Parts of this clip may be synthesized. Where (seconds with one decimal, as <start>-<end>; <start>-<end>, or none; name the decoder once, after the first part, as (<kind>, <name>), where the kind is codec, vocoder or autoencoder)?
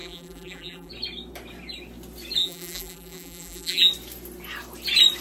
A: 0.0-0.9 (vocoder, BigVGAN v2); 2.4-3.9